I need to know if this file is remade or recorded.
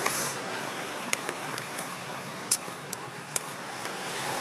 remade